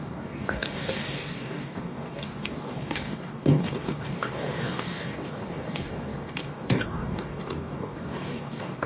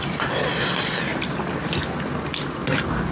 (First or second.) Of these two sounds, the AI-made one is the first